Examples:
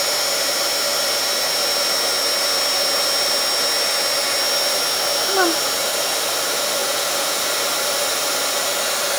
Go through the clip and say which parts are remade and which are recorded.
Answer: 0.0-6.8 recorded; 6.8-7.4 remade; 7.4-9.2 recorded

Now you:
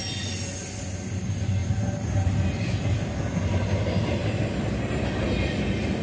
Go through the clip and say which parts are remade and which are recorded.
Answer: 0.0-6.0 recorded